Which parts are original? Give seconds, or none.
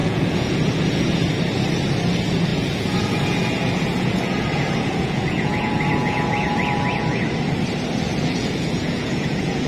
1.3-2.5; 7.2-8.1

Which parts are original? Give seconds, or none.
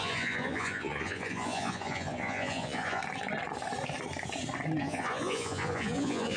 3.0-4.8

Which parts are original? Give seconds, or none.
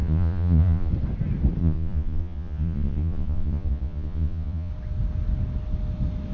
0.9-1.6; 4.7-6.3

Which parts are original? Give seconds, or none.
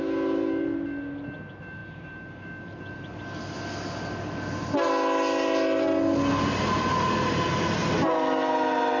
0.0-9.0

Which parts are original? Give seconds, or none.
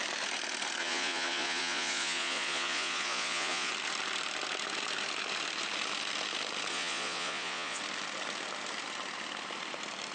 0.0-0.8; 3.7-6.7; 7.8-10.1